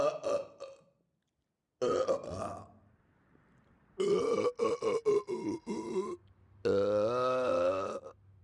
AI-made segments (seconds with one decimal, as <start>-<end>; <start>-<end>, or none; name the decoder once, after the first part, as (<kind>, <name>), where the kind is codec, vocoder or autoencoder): none